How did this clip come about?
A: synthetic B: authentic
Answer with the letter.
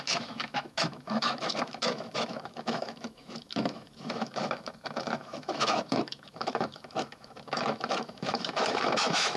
A